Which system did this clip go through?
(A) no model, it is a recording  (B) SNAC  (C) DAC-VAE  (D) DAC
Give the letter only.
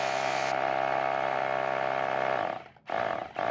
A